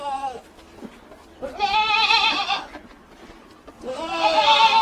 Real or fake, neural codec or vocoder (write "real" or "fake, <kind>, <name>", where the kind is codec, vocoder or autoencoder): real